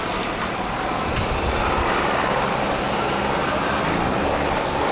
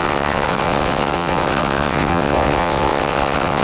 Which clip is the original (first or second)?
first